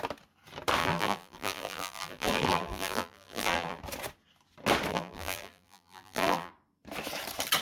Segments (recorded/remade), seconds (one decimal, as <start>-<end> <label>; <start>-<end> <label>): 0.0-0.8 recorded; 0.8-3.8 remade; 3.8-4.9 recorded; 4.9-6.5 remade; 6.5-7.6 recorded